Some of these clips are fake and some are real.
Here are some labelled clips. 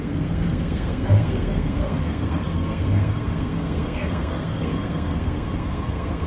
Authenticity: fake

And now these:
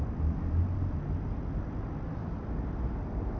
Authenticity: real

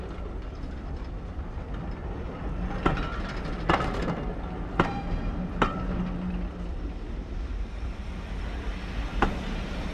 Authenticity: real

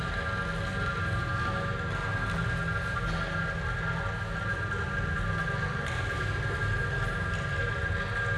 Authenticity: real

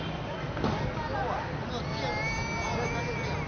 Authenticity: real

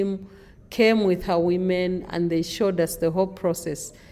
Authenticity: real